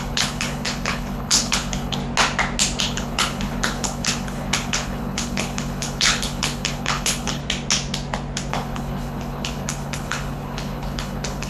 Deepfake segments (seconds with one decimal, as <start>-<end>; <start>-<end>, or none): 0.0-2.0; 2.8-7.4; 8.5-11.5